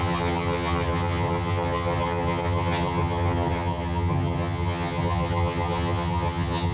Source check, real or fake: fake